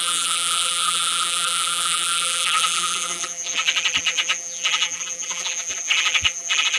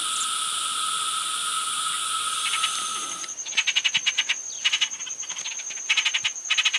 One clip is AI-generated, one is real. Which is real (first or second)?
second